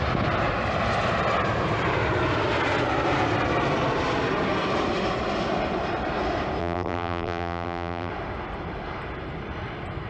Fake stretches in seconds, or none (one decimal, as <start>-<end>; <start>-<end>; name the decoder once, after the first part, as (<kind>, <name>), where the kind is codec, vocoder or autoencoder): 6.6-8.1 (vocoder, BigVGAN v2)